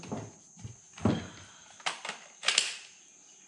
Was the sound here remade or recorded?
recorded